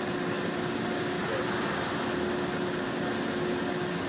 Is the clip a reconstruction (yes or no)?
no